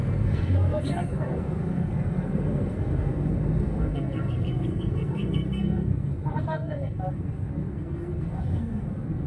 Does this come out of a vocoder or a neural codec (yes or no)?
yes